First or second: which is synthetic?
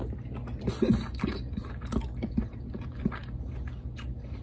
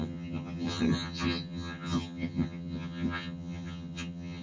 second